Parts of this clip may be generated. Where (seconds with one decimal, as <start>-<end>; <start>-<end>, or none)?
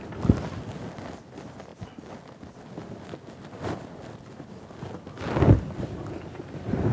none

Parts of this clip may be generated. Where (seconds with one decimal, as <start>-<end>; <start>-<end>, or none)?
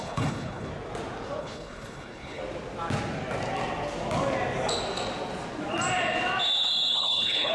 0.0-0.7; 1.4-2.4; 6.9-7.5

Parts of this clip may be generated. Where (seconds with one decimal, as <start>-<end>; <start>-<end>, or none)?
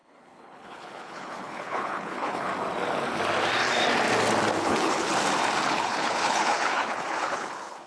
0.0-2.5; 4.6-5.1; 5.7-7.9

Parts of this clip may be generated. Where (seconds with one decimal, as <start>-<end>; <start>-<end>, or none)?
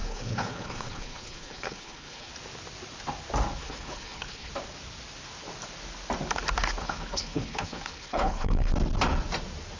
0.0-2.3; 3.6-4.5; 6.8-8.7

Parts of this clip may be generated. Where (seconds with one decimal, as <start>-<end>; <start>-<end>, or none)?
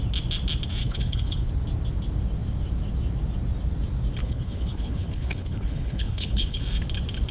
0.8-1.5; 4.2-6.6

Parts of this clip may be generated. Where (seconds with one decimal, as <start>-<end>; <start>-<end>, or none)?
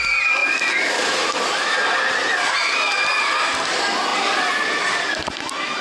none